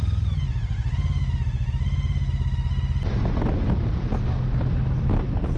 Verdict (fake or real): real